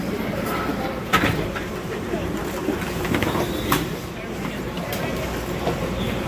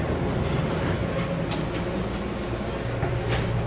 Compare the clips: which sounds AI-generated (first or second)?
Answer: first